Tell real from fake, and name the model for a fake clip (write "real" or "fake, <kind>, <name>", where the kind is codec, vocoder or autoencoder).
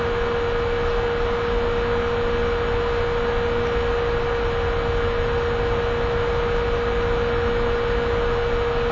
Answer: real